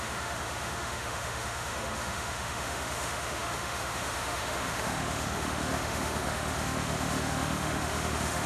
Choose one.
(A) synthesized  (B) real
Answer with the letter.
A